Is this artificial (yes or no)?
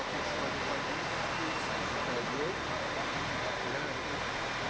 no